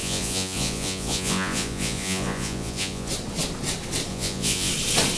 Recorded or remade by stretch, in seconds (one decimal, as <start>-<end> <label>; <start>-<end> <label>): 0.0-3.1 remade; 3.1-4.1 recorded; 4.1-4.7 remade; 4.7-5.2 recorded